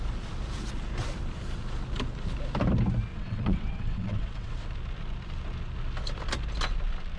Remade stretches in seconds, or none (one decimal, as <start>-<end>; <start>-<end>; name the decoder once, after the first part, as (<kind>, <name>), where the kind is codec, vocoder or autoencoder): 3.1-4.6 (vocoder, WaveNeXt)